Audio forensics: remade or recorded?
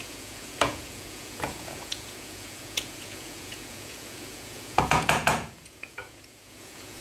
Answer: remade